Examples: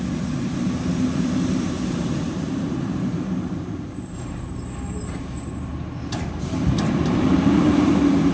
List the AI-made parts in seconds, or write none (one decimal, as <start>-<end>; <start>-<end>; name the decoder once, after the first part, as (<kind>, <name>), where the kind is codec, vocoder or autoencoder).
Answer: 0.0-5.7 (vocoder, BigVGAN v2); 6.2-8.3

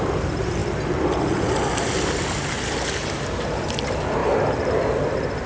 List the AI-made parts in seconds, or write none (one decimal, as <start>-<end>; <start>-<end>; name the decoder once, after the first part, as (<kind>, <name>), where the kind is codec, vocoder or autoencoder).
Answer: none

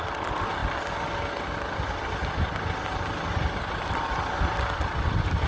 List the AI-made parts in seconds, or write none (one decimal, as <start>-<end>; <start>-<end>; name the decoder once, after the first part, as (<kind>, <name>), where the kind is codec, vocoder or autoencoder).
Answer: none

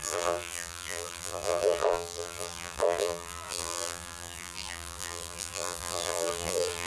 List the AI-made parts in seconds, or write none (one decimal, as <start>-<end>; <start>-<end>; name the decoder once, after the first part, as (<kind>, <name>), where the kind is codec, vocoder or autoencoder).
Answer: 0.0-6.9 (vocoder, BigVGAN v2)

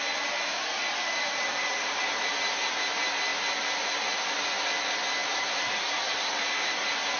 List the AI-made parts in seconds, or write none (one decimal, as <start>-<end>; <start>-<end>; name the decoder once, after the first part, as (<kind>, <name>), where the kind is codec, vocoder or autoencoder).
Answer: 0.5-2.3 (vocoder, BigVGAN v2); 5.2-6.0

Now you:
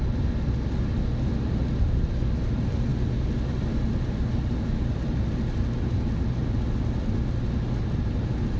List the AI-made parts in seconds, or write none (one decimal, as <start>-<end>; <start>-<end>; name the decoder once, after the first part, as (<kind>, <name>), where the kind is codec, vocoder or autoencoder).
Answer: none